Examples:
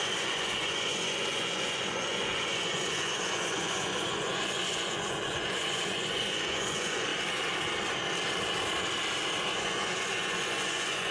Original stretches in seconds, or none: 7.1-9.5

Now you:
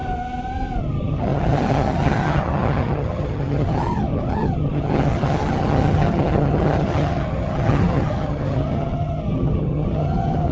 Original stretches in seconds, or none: 0.0-0.8

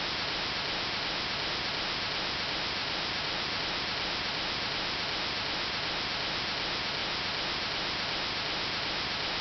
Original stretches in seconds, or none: 0.0-2.8; 3.6-9.4

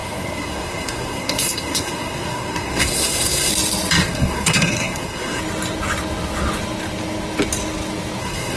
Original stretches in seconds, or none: 3.5-4.0; 5.4-8.2